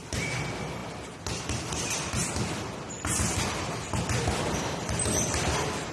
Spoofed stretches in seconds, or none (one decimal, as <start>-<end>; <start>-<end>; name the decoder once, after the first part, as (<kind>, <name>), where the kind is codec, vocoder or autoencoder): none